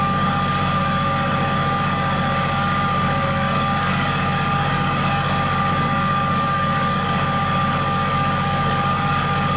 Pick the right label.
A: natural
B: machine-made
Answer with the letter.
B